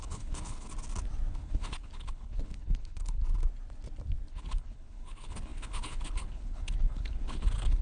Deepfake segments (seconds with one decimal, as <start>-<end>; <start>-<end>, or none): 0.0-0.7; 1.3-3.2; 4.3-7.8